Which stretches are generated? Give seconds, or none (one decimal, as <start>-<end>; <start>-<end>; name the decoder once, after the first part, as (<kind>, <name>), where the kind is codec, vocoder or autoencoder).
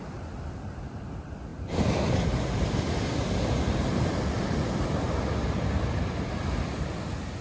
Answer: none